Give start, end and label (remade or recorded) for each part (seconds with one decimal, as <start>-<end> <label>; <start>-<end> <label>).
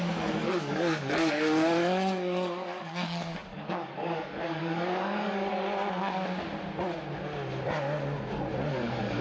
0.0-5.5 remade; 5.5-8.7 recorded; 8.7-9.2 remade